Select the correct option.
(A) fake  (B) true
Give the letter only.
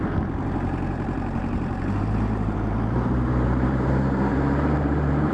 A